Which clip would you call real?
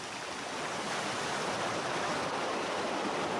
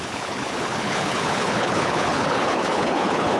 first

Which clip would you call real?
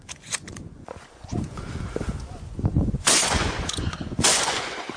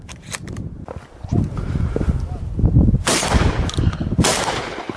second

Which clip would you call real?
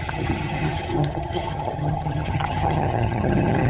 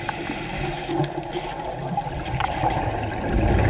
second